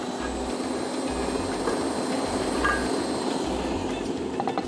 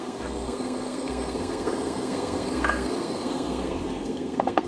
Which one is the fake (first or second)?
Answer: second